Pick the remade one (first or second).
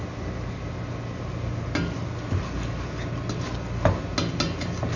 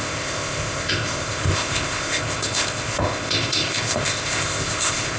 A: second